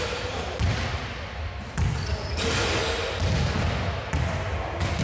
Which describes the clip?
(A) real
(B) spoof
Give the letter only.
A